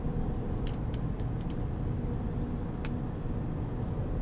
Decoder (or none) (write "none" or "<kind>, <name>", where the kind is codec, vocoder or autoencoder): none